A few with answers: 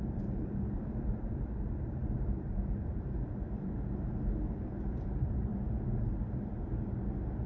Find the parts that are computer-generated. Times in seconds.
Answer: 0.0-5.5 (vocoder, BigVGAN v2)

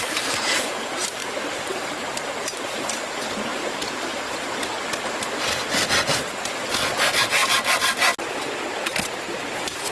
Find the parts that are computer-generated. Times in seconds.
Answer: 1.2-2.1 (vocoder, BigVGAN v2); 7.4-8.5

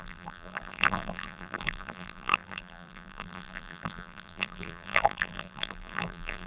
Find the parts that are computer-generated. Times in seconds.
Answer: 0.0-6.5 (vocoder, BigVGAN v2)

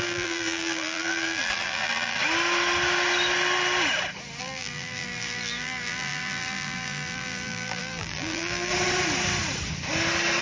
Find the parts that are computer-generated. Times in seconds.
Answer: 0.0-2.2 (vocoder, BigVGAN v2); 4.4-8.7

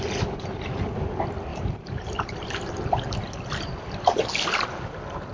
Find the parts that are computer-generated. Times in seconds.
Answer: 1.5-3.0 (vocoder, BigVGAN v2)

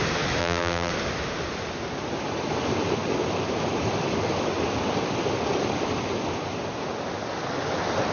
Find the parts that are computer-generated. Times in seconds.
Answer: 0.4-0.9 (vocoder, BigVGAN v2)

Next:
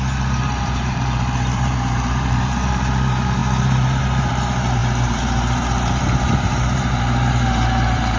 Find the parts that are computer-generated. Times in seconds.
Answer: 0.0-8.2 (vocoder, BigVGAN v2)

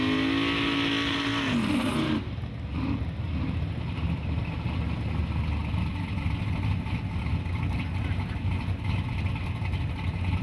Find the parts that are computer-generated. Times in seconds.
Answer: none